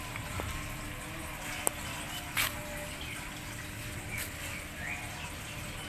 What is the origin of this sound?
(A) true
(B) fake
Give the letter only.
A